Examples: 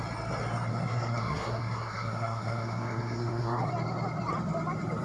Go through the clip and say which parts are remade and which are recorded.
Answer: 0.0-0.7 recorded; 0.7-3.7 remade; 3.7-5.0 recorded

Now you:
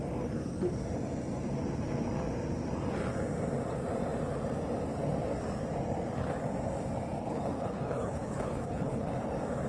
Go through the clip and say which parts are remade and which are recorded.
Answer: 0.0-7.2 recorded; 7.2-9.1 remade; 9.1-9.7 recorded

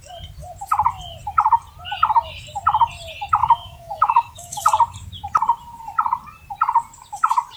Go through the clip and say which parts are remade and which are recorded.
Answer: 0.0-3.4 recorded; 3.4-4.6 remade; 4.6-7.6 recorded

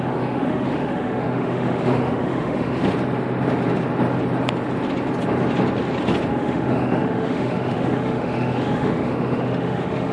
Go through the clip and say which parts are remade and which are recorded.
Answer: 0.0-2.8 remade; 2.8-6.3 recorded; 6.3-10.1 remade

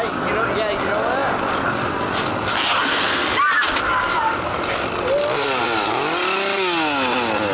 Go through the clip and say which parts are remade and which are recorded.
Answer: 0.0-7.5 recorded

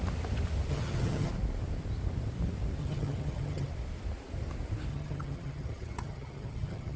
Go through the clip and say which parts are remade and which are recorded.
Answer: 0.0-0.7 recorded; 0.7-1.3 remade; 1.3-2.8 recorded; 2.8-3.7 remade; 3.7-4.9 recorded; 4.9-7.0 remade

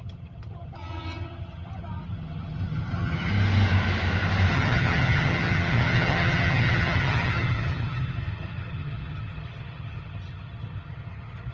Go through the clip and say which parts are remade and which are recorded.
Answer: 0.0-3.3 remade; 3.3-4.5 recorded; 4.5-11.5 remade